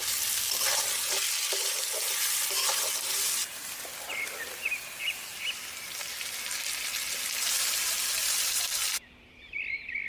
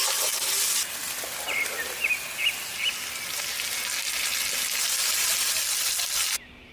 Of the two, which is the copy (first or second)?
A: first